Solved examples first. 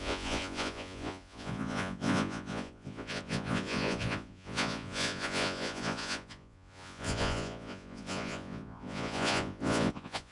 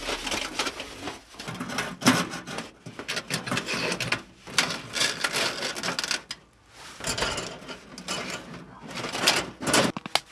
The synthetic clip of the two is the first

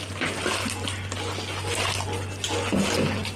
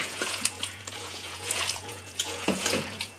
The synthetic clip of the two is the second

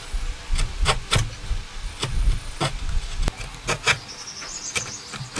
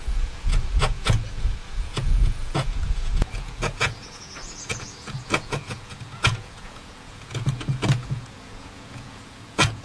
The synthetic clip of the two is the second